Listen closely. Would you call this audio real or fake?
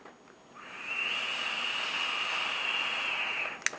real